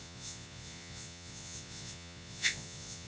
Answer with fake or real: fake